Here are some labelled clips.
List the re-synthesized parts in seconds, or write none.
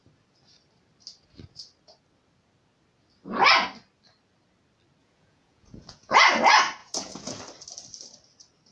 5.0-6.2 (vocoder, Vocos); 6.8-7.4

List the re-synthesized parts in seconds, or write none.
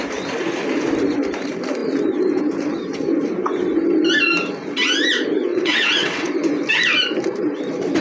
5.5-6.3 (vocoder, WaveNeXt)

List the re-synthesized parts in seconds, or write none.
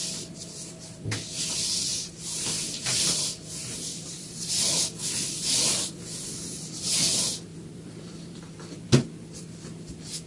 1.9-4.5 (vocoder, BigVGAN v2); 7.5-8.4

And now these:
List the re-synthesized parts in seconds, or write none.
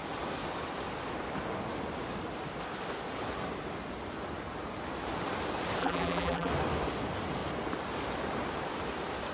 5.8-6.5 (vocoder, BigVGAN v2)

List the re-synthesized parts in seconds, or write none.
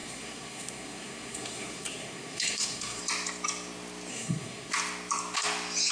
0.0-3.0 (codec, SNAC); 4.1-4.7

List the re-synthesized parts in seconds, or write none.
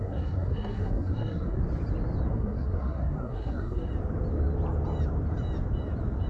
0.0-1.6 (codec, SNAC); 2.3-3.9